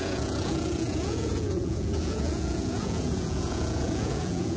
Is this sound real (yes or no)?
no